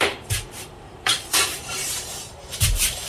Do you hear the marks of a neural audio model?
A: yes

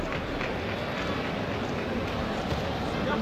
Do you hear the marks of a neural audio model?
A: no